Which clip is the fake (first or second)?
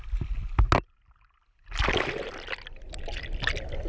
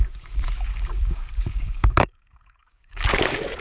second